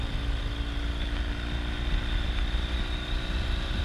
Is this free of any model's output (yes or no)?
yes